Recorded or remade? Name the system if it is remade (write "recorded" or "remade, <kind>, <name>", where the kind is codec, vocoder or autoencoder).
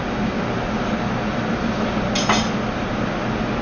recorded